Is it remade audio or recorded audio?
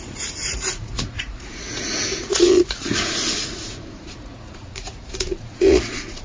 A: remade